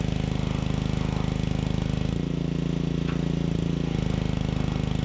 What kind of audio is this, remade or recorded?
recorded